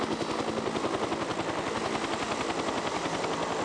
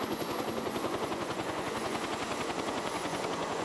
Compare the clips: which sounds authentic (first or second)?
first